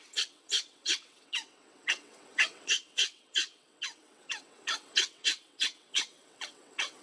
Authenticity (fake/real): fake